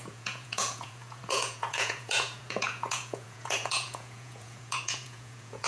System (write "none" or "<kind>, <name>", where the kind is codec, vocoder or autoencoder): vocoder, Vocos